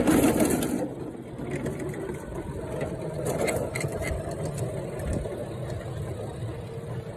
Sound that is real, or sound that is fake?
fake